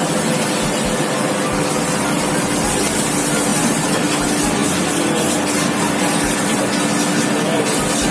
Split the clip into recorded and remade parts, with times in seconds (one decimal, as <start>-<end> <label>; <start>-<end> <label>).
0.0-8.1 recorded